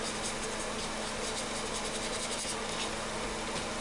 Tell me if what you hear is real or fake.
real